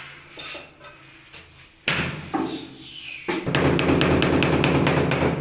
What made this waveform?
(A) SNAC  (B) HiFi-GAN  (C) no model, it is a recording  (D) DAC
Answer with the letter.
C